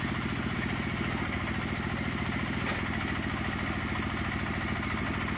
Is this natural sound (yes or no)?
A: yes